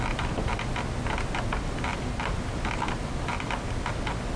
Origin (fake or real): real